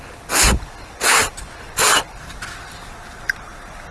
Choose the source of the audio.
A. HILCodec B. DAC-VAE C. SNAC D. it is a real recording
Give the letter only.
D